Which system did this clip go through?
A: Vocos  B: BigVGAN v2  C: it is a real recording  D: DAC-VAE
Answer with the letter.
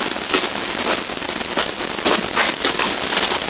C